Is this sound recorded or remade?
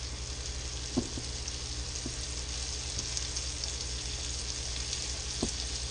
recorded